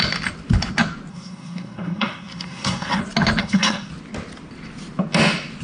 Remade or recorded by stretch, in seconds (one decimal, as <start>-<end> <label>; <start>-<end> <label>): 0.0-1.1 recorded; 1.1-3.0 remade; 3.0-3.4 recorded; 3.4-3.9 remade; 3.9-5.6 recorded